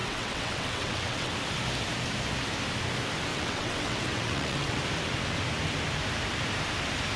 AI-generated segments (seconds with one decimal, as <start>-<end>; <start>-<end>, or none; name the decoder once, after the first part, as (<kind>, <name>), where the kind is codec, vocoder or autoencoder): 0.0-1.3 (vocoder, WaveNeXt); 3.3-4.8